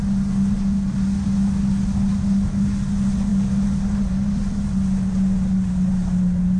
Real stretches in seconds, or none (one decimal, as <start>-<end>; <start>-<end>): 0.0-6.6